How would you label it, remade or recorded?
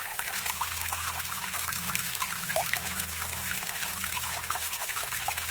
remade